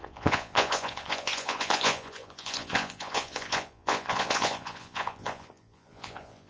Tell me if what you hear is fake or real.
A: fake